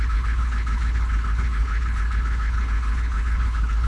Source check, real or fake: fake